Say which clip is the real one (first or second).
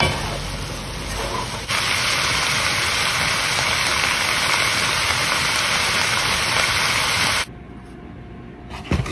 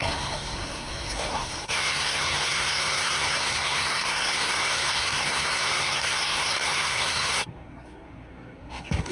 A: first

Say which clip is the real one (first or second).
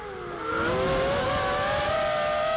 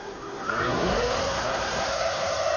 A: first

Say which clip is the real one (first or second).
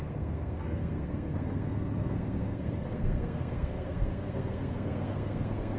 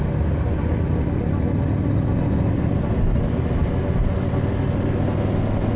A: second